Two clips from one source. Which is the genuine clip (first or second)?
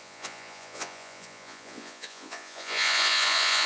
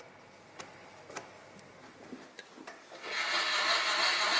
second